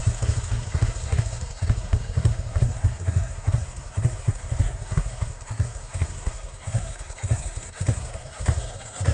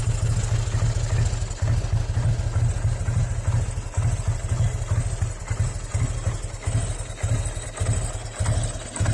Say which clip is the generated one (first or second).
first